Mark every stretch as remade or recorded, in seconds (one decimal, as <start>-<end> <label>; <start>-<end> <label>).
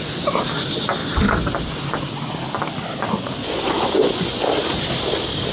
0.0-3.4 recorded; 3.4-4.3 remade; 4.3-5.5 recorded